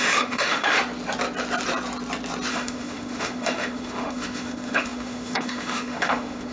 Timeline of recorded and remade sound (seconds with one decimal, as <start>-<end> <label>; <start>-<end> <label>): 0.0-0.8 remade; 0.8-2.5 recorded; 2.5-6.5 remade

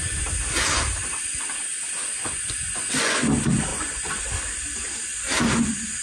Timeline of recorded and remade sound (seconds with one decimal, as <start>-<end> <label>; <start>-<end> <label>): 0.0-2.2 recorded; 2.2-3.3 remade; 3.3-3.7 recorded; 3.7-4.2 remade; 4.2-6.0 recorded

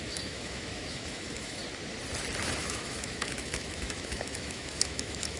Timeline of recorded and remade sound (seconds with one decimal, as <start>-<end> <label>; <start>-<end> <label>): 0.0-1.6 remade; 1.6-2.6 recorded; 2.6-5.4 remade

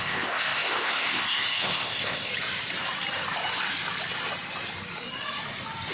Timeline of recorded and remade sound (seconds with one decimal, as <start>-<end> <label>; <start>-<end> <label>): 0.0-2.3 remade; 2.3-5.9 recorded

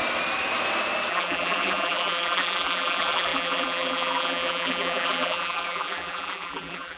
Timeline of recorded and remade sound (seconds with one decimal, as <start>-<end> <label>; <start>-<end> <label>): 0.0-1.1 recorded; 1.1-7.0 remade